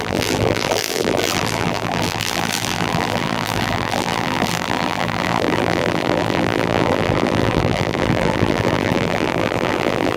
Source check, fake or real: fake